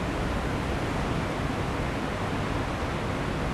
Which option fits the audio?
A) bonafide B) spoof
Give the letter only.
A